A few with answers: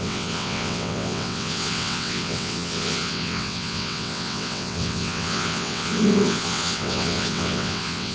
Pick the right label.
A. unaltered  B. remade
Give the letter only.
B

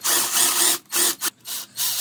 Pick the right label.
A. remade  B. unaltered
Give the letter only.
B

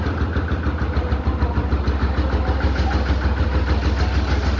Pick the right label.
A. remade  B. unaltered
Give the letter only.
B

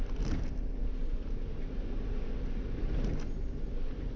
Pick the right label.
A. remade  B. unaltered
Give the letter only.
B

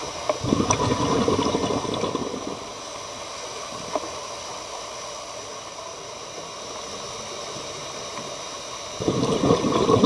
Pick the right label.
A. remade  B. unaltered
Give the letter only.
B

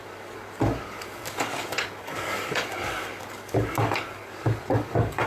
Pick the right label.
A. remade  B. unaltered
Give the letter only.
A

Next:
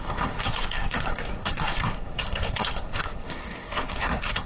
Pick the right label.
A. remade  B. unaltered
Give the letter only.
A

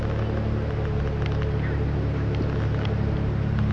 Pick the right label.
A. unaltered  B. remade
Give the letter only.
A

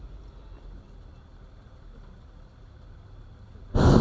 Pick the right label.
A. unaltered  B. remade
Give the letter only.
A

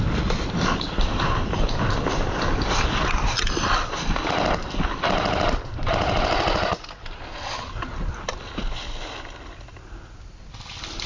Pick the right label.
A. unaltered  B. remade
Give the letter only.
A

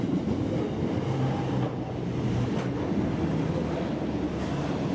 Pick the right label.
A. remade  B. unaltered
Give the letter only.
B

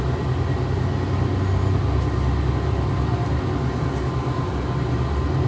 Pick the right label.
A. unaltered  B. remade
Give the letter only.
A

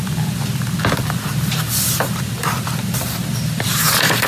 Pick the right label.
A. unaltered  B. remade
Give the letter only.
B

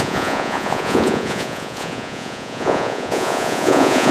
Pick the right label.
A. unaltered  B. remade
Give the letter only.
B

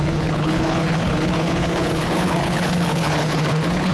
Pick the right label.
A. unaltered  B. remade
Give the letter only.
B